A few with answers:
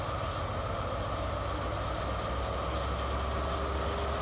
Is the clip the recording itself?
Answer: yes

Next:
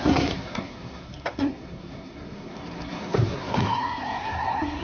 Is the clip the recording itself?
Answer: no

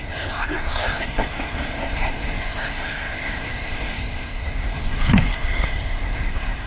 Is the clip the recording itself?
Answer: no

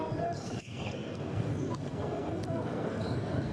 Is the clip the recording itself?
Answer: no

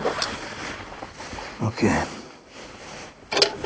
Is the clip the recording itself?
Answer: yes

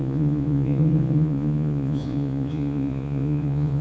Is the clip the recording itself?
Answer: no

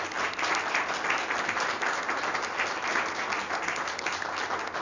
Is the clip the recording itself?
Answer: yes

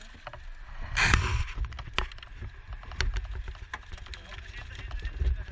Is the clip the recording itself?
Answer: yes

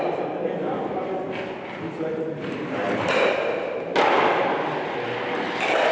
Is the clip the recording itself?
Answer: yes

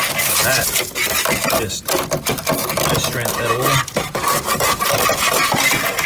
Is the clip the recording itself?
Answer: yes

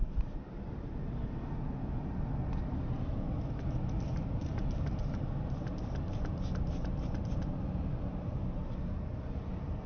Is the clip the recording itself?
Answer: yes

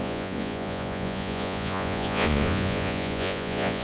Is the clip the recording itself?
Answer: no